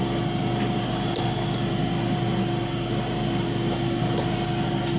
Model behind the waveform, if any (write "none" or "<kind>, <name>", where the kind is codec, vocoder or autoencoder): none